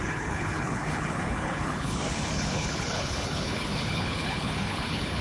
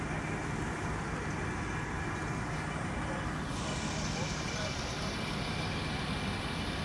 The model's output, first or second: first